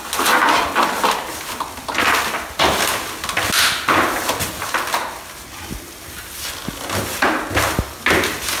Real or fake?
real